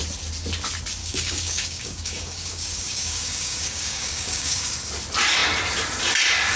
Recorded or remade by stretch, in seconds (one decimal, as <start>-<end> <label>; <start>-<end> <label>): 0.0-1.0 recorded; 1.0-4.9 remade; 4.9-6.6 recorded